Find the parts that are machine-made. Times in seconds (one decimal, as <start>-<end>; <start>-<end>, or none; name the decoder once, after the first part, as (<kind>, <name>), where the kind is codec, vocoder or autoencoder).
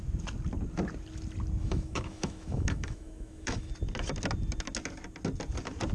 1.6-3.7 (autoencoder, DAC-VAE)